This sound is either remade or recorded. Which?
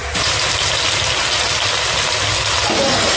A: recorded